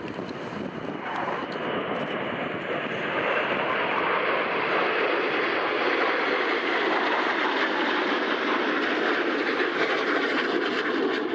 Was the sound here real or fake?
fake